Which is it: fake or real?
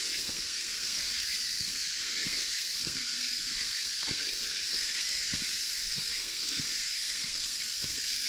fake